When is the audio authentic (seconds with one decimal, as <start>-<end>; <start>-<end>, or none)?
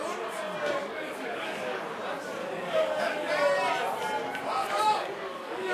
0.0-0.8; 1.9-2.4; 3.3-4.6